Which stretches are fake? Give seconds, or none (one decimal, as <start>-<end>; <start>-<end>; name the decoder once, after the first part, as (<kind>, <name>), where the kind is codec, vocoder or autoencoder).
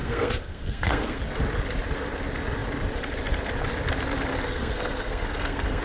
0.0-1.2 (codec, SNAC); 4.3-5.8